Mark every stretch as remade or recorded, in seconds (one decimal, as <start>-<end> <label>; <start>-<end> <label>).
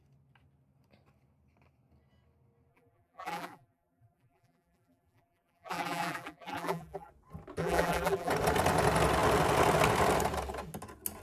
0.0-2.7 recorded; 2.7-7.1 remade; 7.1-7.6 recorded; 7.6-8.3 remade; 8.3-11.2 recorded